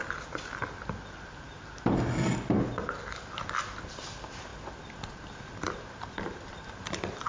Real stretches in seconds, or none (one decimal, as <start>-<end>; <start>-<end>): 0.0-7.3